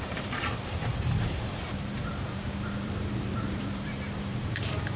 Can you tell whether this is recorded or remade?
remade